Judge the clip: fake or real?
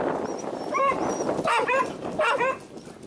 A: real